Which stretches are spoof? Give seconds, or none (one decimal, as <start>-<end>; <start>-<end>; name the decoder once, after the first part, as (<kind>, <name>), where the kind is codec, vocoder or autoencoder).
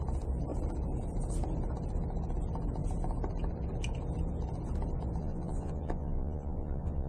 5.2-7.1 (vocoder, Vocos)